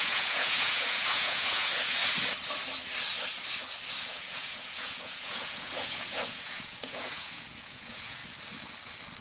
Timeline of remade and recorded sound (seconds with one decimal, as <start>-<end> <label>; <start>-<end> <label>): 0.0-2.0 remade; 2.0-3.9 recorded; 3.9-8.2 remade; 8.2-9.2 recorded